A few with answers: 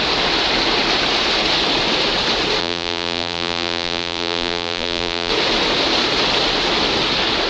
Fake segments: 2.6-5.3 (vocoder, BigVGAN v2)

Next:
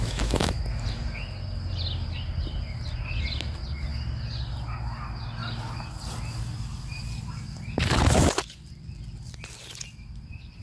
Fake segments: 0.0-0.6 (autoencoder, DAC-VAE)

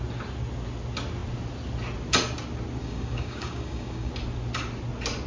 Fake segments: 2.8-4.1 (codec, DAC)

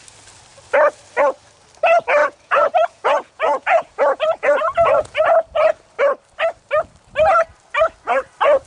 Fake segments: 2.2-5.7 (vocoder, Vocos)

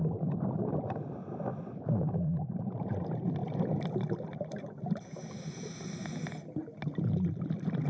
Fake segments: none

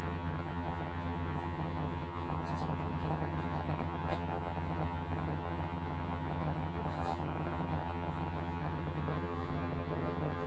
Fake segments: 0.0-10.5 (vocoder, HiFi-GAN)

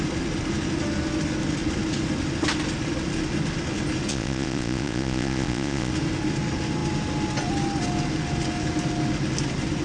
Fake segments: 4.1-5.9 (vocoder, Vocos)

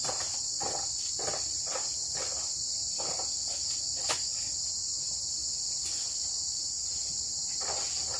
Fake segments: none